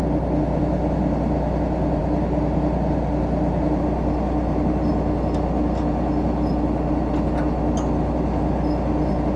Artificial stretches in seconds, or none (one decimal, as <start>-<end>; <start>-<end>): none

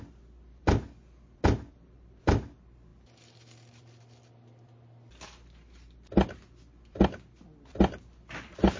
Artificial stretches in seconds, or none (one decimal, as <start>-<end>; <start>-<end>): none

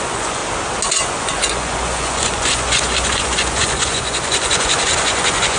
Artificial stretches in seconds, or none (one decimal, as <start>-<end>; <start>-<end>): 0.0-0.4; 0.9-5.6

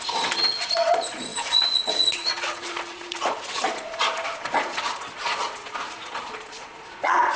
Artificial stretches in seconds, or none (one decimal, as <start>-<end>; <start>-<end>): 0.0-7.4